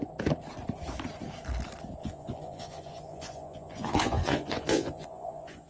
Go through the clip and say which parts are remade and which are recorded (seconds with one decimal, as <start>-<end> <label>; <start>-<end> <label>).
0.0-2.0 recorded; 2.0-5.7 remade